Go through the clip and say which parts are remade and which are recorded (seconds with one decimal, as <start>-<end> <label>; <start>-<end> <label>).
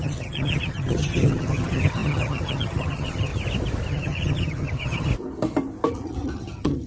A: 0.0-3.3 remade; 3.3-3.9 recorded; 3.9-5.1 remade; 5.1-5.9 recorded; 5.9-6.9 remade